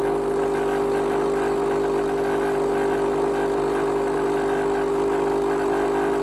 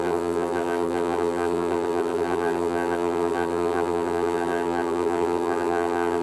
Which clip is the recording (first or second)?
first